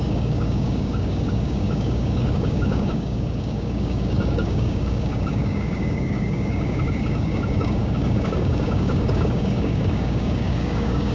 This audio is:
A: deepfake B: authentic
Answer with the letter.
A